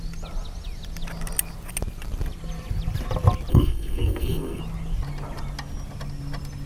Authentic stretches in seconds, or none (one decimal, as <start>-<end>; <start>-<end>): 0.0-3.5; 4.6-6.7